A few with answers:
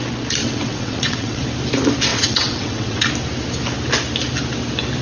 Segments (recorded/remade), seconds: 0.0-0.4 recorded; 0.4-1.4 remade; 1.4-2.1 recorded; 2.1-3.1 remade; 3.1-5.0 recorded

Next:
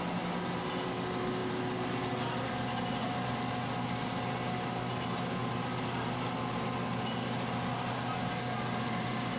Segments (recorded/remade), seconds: 0.0-9.4 recorded